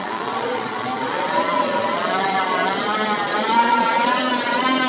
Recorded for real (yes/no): no